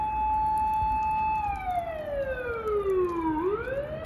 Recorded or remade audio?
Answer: recorded